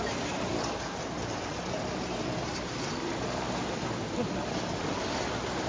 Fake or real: fake